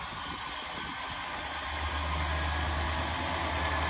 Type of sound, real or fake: real